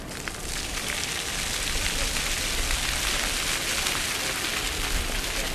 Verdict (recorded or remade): recorded